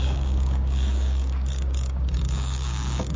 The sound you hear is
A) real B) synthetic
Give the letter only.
B